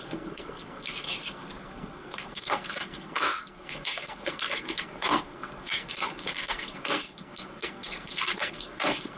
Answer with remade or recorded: remade